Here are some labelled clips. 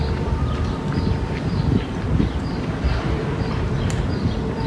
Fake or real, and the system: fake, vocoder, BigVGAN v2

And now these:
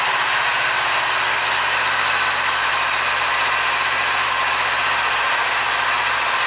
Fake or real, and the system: real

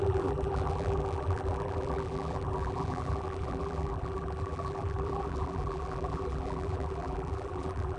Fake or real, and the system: fake, vocoder, BigVGAN v2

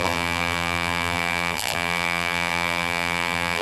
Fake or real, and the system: fake, vocoder, BigVGAN v2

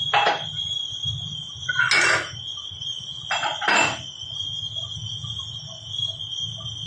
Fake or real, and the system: real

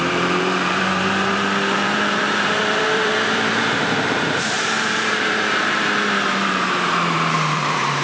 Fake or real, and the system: fake, vocoder, BigVGAN v2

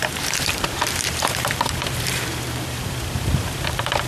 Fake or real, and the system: fake, vocoder, BigVGAN v2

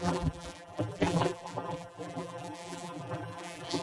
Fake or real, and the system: fake, vocoder, BigVGAN v2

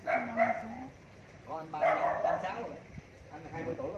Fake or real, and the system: fake, vocoder, BigVGAN v2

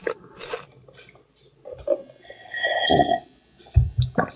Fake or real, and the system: real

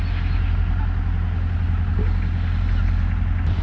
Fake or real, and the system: real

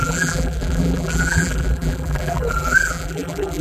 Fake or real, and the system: fake, vocoder, BigVGAN v2